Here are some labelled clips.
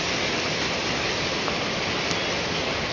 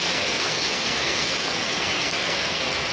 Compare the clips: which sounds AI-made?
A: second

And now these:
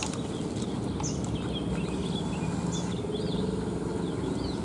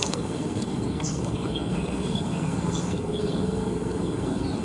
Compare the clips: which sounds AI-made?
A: second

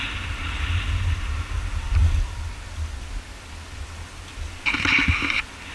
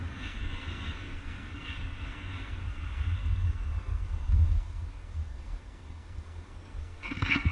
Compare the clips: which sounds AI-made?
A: second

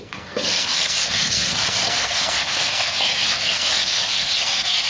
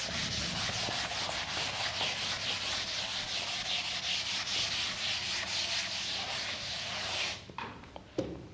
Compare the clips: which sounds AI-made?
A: first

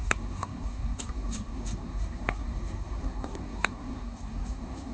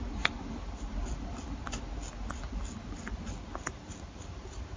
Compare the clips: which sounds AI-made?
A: first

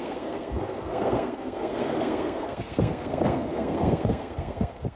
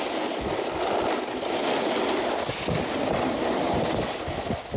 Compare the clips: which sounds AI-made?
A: first